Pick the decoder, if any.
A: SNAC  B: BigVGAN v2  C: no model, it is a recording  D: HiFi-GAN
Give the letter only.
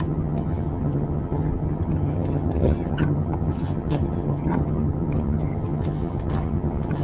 D